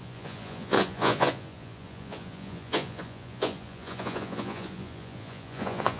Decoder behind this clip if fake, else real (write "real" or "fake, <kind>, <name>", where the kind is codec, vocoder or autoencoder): fake, vocoder, Vocos